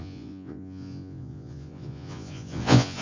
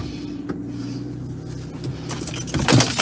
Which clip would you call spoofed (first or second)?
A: first